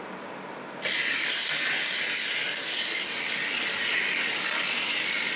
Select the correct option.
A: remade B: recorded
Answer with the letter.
B